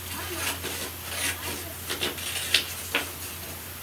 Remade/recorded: recorded